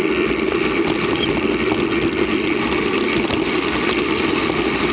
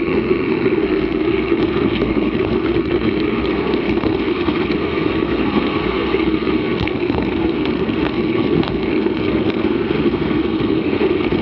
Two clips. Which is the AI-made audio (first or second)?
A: second